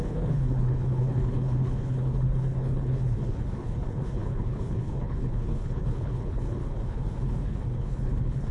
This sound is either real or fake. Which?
fake